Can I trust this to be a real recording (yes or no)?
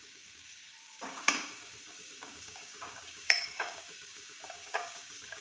no